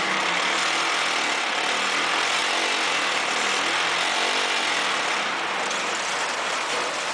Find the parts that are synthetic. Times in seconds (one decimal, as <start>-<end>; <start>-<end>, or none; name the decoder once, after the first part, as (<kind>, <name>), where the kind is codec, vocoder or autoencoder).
none